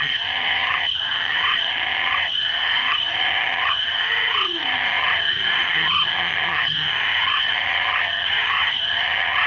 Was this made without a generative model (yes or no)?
no